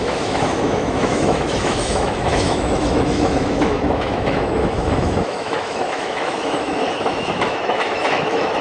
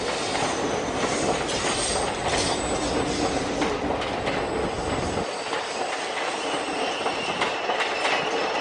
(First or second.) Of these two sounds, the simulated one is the first